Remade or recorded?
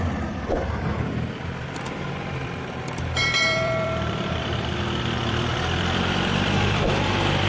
remade